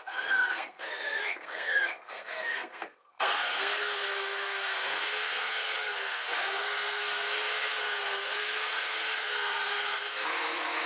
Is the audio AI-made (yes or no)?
yes